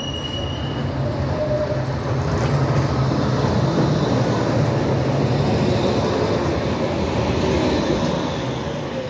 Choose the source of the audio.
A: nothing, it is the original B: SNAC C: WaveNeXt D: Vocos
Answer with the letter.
A